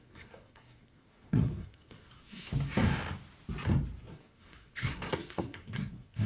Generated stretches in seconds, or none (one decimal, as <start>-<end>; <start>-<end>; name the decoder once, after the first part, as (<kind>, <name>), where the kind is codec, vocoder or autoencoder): 0.0-2.5 (codec, SNAC); 4.0-6.3